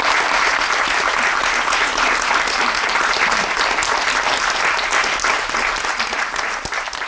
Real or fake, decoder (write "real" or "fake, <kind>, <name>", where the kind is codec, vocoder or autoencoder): real